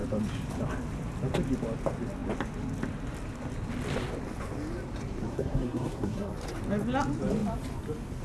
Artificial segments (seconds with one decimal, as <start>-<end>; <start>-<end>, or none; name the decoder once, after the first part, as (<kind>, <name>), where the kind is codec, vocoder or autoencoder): 5.3-6.3 (codec, SNAC)